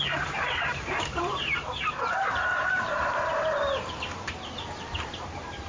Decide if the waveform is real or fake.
fake